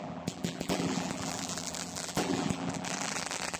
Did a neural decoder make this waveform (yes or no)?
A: yes